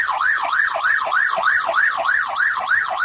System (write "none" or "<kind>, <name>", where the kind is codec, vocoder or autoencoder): none